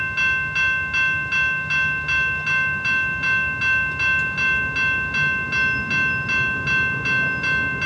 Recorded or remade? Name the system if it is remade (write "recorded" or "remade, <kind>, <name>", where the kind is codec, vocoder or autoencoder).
recorded